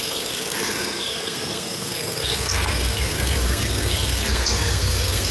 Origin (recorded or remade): remade